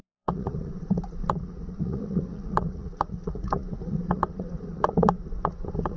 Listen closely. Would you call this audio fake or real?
fake